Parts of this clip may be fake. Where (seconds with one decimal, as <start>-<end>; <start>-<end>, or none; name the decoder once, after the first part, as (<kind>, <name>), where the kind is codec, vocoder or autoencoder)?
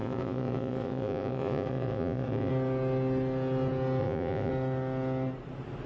0.0-2.5 (vocoder, Vocos); 4.0-4.5